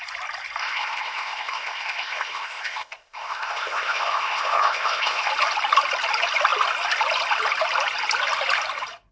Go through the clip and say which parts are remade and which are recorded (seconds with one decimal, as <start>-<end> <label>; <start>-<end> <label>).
0.0-0.6 recorded; 0.6-5.3 remade; 5.3-9.1 recorded